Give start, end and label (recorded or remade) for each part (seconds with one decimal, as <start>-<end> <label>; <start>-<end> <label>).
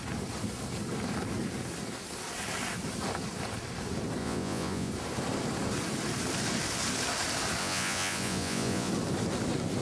0.0-4.2 recorded; 4.2-4.9 remade; 4.9-7.6 recorded; 7.6-8.9 remade; 8.9-9.8 recorded